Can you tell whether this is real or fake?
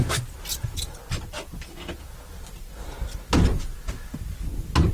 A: real